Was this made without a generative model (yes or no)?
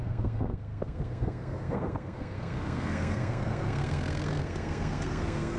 no